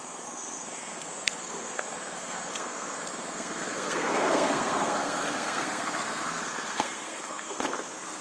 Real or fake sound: fake